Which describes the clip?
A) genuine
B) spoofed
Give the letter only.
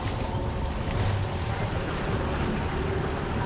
A